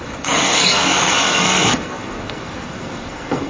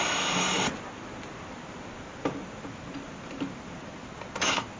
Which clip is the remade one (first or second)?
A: first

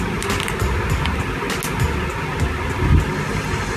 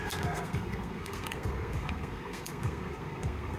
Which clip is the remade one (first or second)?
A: second